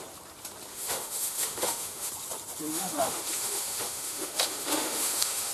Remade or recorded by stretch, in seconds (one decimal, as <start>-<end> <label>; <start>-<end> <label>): 0.0-0.7 recorded; 0.7-2.1 remade; 2.1-2.7 recorded; 2.7-5.5 remade

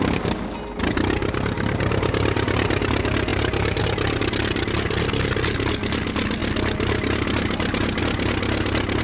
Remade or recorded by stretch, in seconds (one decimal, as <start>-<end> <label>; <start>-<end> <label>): 0.0-3.3 recorded; 3.3-3.8 remade; 3.8-9.0 recorded

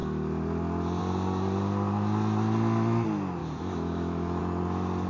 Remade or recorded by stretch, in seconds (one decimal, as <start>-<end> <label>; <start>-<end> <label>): 0.0-3.4 recorded; 3.4-4.4 remade; 4.4-5.1 recorded

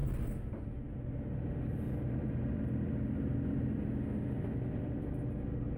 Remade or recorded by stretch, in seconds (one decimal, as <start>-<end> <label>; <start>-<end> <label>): 0.0-5.8 recorded